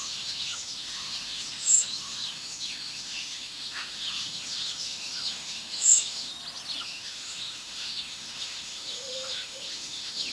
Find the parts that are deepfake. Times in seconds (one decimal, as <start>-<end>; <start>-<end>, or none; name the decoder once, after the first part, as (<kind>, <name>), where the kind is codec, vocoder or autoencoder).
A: 0.0-6.3 (autoencoder, DAC-VAE); 6.8-10.3